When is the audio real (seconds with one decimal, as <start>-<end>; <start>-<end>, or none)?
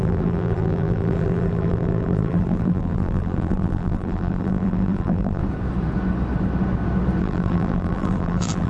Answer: 5.4-7.2